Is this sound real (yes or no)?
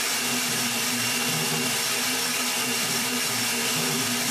no